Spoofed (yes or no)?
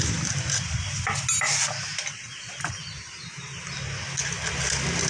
no